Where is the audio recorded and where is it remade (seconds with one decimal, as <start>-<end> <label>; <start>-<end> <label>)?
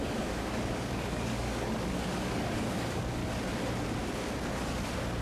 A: 0.0-3.2 remade; 3.2-5.2 recorded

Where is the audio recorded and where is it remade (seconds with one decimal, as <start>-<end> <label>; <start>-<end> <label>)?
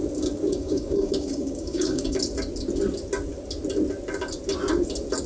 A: 0.0-0.5 recorded; 0.5-2.2 remade; 2.2-5.3 recorded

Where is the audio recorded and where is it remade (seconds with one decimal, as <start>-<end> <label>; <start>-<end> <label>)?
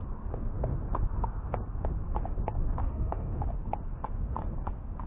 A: 0.0-2.8 recorded; 2.8-3.3 remade; 3.3-5.1 recorded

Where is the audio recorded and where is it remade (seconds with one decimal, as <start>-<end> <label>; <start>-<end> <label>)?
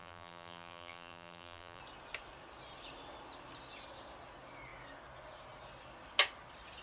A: 0.0-1.8 remade; 1.8-6.8 recorded